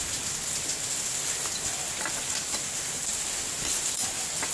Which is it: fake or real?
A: real